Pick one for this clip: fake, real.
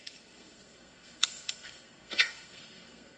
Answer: fake